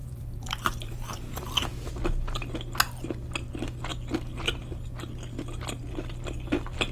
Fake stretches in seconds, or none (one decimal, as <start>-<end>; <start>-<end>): 0.0-1.9